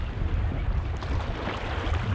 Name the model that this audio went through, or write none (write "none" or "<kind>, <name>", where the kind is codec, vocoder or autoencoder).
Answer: none